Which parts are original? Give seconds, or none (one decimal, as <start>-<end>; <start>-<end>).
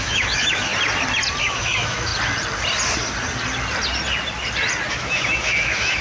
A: 0.7-1.4; 2.1-4.9